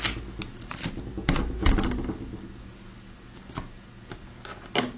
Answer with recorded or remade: recorded